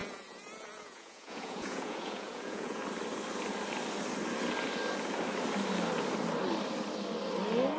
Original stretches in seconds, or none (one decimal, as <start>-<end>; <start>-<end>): 2.8-7.8